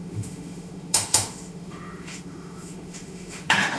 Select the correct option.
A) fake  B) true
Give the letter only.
A